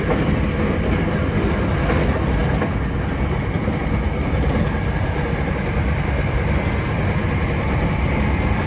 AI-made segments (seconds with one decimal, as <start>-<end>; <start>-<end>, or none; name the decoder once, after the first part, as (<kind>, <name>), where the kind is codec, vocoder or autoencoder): none